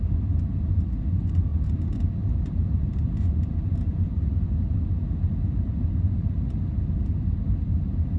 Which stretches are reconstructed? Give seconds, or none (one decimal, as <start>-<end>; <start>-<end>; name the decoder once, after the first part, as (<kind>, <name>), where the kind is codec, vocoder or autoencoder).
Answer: 1.5-5.7 (vocoder, BigVGAN v2)

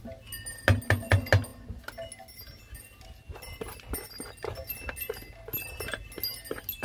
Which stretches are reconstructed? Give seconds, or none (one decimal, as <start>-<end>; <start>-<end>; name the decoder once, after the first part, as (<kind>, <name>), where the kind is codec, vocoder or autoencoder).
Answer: none

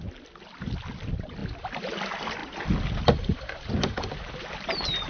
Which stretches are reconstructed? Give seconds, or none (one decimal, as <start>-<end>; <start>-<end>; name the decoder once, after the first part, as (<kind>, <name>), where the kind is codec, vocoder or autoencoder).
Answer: 1.4-1.9 (vocoder, BigVGAN v2); 2.4-4.3

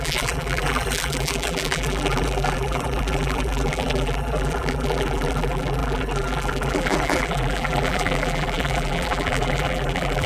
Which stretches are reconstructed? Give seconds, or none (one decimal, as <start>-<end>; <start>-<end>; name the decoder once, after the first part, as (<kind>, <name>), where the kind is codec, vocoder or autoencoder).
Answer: 0.0-10.3 (vocoder, BigVGAN v2)

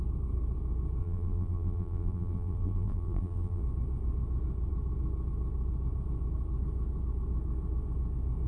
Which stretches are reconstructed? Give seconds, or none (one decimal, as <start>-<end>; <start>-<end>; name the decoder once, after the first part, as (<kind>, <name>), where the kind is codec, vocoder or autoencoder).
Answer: 1.0-3.6 (vocoder, BigVGAN v2)

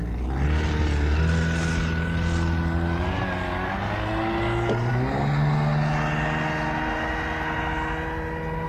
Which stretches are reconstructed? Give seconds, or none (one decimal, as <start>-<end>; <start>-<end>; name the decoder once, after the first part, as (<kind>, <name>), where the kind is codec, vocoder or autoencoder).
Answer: none

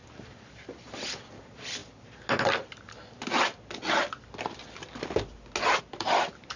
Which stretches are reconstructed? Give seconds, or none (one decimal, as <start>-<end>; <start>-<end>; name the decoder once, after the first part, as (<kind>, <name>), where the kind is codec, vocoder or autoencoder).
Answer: 0.0-1.8 (vocoder, BigVGAN v2); 5.8-6.6

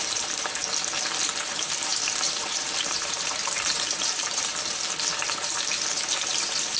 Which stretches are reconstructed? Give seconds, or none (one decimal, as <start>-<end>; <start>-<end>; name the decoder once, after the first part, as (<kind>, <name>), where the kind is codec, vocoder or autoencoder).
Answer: 0.0-0.6 (vocoder, BigVGAN v2); 1.4-4.5; 5.3-6.8